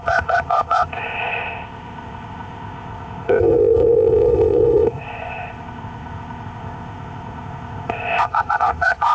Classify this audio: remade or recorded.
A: remade